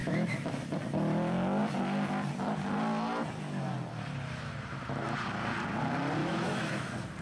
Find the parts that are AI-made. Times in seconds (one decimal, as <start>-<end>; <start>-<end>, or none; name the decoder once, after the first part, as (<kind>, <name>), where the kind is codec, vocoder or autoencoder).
0.0-0.6 (autoencoder, DAC-VAE); 6.2-6.8

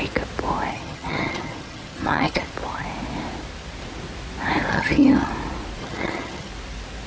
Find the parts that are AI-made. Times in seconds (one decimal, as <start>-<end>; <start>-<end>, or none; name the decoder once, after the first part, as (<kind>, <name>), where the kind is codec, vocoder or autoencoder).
0.7-2.5 (vocoder, HiFi-GAN); 4.7-5.3; 5.8-6.5

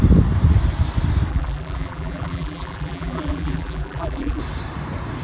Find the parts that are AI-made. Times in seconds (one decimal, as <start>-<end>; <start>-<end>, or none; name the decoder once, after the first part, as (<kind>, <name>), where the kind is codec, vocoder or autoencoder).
1.3-4.4 (vocoder, BigVGAN v2)

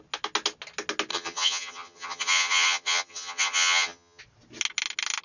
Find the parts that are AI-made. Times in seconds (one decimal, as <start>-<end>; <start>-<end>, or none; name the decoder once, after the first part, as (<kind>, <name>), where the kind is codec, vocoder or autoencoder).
1.1-4.2 (vocoder, HiFi-GAN)

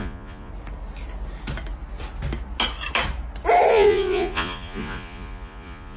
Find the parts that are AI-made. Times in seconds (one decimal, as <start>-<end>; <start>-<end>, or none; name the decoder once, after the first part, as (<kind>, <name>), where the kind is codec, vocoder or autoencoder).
0.0-0.5 (vocoder, Vocos); 3.7-6.0

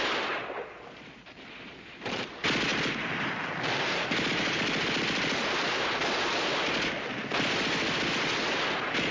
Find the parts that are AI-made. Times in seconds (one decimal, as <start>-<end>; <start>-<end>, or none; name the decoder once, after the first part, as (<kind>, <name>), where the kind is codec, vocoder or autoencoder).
none

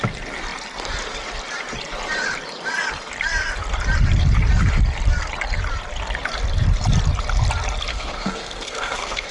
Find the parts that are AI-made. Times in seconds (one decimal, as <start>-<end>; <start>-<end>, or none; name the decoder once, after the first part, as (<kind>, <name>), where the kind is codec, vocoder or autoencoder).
7.9-9.3 (codec, SNAC)

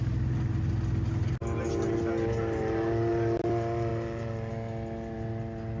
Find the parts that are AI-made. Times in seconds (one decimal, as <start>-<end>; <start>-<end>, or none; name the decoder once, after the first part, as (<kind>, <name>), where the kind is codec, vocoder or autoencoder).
none